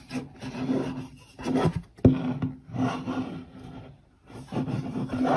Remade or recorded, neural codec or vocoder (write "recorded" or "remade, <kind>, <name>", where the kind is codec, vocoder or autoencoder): recorded